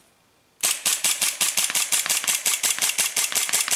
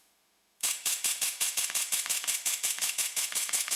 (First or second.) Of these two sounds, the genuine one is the first